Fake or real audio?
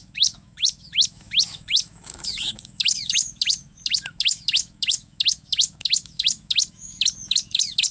fake